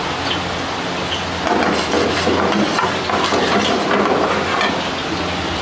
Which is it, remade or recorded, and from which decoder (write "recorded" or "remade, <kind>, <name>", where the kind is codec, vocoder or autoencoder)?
recorded